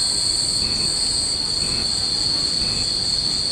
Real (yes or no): yes